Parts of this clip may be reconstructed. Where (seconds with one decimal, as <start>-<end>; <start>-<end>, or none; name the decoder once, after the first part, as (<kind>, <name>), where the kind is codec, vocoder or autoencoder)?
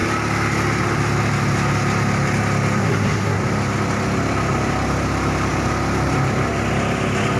2.8-3.4 (codec, SNAC)